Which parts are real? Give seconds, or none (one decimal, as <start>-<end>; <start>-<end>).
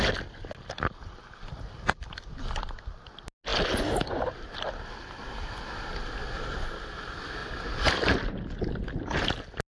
0.0-7.4; 8.3-9.7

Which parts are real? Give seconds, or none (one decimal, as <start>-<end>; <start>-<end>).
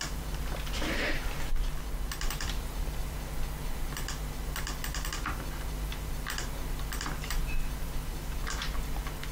1.5-2.2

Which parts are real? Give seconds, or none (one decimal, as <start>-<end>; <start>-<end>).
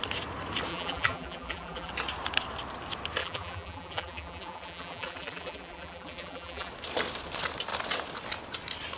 0.0-0.7; 1.9-3.2; 6.7-9.0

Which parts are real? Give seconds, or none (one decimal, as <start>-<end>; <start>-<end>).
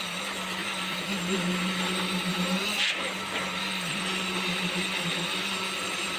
0.0-0.6; 4.0-6.2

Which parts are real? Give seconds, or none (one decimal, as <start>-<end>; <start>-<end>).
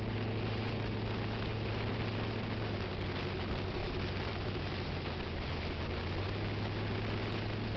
0.0-3.8; 4.9-7.8